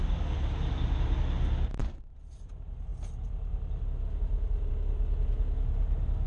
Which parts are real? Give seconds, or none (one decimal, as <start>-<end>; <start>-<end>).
0.0-1.8; 2.5-6.3